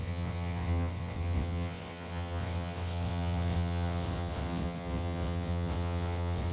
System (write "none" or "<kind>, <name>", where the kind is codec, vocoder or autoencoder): vocoder, WaveNeXt